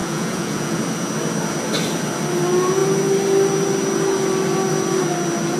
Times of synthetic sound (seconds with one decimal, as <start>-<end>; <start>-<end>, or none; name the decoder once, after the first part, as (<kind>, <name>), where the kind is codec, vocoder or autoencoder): 0.0-0.8 (vocoder, Vocos)